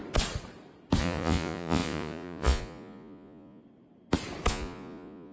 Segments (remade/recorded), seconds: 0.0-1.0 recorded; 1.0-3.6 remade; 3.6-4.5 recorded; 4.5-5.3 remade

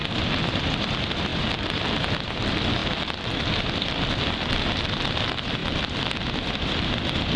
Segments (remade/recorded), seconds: 0.0-7.4 recorded